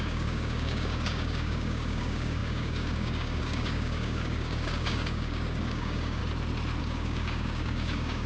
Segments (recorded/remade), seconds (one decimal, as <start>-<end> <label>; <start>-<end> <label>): 0.0-6.2 remade; 6.2-6.8 recorded; 6.8-8.3 remade